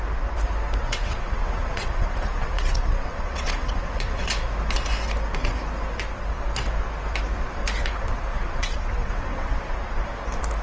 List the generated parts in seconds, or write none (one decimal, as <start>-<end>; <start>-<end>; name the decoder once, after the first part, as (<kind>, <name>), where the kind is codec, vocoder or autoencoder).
0.8-4.3 (vocoder, WaveNeXt); 8.3-9.6